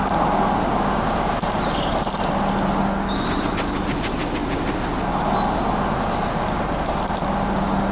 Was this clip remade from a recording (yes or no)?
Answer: no